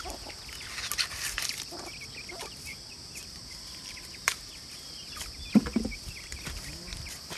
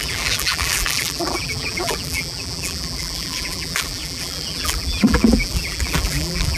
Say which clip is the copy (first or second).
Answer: second